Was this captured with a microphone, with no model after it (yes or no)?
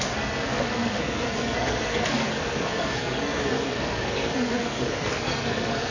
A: no